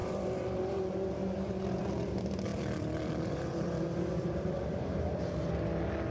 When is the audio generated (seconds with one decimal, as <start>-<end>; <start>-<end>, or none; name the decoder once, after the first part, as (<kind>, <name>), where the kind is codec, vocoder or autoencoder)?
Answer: 0.0-1.8 (vocoder, BigVGAN v2); 2.5-5.5